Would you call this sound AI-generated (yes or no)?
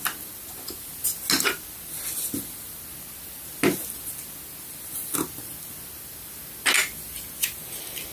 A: no